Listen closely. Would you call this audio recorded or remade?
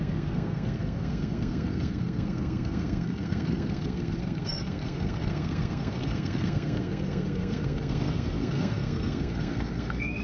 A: remade